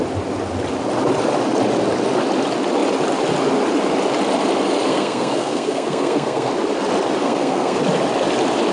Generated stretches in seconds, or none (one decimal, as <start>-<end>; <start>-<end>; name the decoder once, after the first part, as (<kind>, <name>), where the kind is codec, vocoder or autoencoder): 4.9-6.5 (codec, SNAC); 7.2-7.8